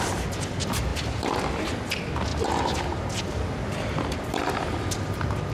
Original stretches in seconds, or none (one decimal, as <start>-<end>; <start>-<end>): 0.0-2.3